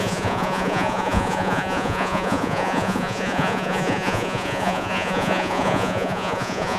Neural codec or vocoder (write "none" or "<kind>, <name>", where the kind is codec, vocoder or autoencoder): vocoder, Vocos